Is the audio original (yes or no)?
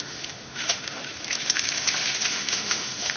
no